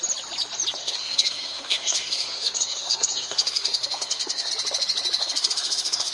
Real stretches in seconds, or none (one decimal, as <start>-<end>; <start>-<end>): 0.0-0.8; 4.5-5.2